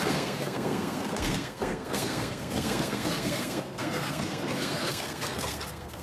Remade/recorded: remade